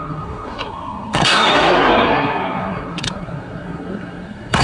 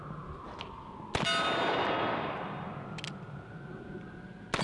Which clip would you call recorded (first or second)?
second